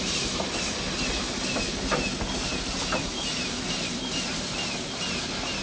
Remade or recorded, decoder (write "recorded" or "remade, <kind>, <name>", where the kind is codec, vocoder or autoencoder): recorded